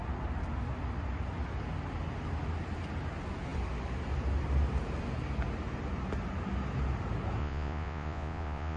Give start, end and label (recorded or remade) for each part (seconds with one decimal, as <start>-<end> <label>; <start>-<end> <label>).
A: 0.0-7.4 recorded; 7.4-8.8 remade